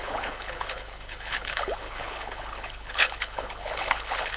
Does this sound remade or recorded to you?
remade